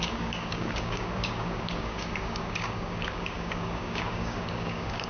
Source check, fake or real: fake